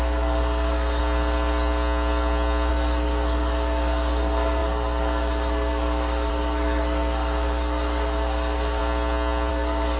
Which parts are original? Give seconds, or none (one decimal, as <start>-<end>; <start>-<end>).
1.0-2.7; 8.8-9.5